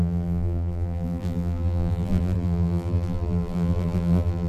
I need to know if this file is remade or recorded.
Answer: remade